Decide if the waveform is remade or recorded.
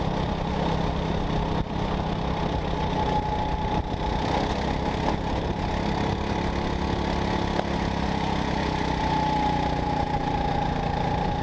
recorded